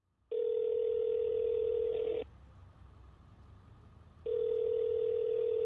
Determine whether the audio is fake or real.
real